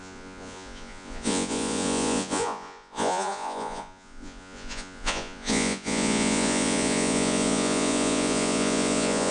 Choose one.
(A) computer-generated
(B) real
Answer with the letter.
A